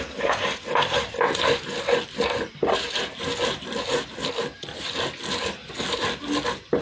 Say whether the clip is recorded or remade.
recorded